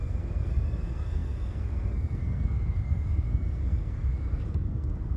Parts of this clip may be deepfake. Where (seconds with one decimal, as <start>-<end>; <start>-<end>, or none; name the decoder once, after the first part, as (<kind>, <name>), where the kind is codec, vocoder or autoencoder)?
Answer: 0.0-5.2 (codec, SNAC)